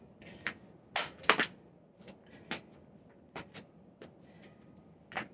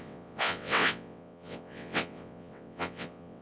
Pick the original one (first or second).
first